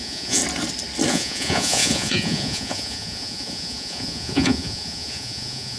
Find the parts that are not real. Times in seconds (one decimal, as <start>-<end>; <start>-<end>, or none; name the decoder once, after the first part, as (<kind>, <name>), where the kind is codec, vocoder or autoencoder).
0.0-0.4 (vocoder, Vocos); 1.1-5.8